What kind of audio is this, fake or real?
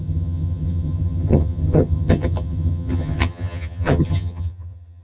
fake